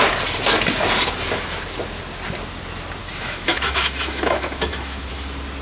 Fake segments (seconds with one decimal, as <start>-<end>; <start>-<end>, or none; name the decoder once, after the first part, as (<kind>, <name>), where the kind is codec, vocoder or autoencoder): 3.0-5.1 (autoencoder, DAC-VAE)